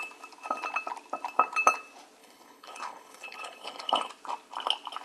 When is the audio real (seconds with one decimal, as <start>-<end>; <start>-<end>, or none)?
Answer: 0.0-2.2; 4.1-5.0

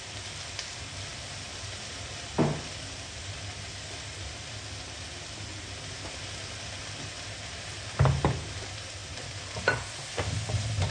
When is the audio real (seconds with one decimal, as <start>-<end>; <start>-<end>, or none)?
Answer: 0.0-10.9

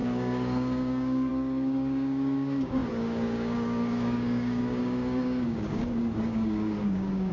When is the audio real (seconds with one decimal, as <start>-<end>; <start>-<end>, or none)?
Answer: none

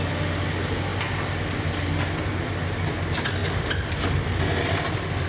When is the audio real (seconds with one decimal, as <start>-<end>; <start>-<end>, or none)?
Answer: 0.0-5.3